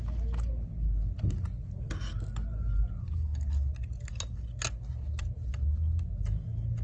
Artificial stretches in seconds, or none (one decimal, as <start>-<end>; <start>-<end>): none